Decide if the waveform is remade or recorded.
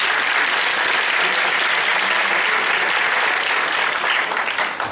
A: recorded